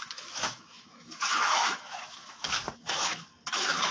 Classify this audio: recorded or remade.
remade